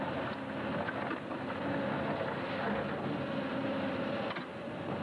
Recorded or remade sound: recorded